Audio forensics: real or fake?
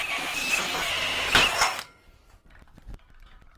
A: real